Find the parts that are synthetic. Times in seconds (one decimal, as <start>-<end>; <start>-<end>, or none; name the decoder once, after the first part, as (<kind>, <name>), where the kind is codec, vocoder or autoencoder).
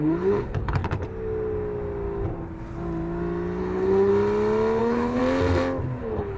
0.0-0.8 (codec, HILCodec); 3.6-4.1; 4.8-5.2; 6.0-6.4